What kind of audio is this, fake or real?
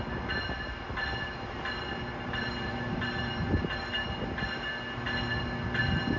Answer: real